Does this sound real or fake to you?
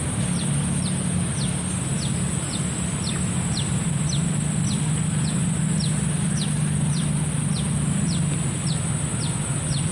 real